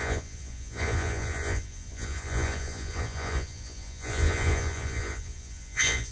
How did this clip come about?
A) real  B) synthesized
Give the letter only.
B